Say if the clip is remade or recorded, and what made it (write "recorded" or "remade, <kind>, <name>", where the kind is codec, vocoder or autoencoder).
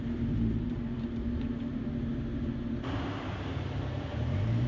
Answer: remade, vocoder, BigVGAN v2